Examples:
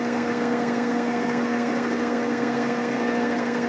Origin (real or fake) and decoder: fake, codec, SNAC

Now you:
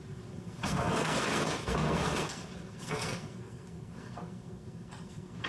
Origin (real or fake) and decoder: fake, codec, SNAC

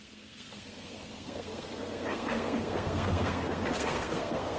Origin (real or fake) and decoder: fake, codec, SNAC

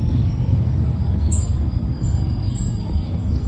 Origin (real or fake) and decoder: fake, codec, SNAC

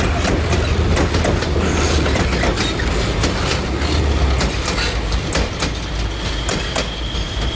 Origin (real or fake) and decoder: real